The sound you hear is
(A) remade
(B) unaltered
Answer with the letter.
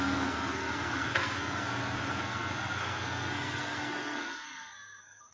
A